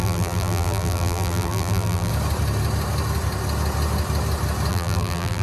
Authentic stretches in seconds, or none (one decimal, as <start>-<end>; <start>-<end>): 2.1-4.7